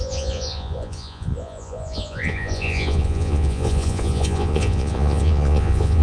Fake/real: fake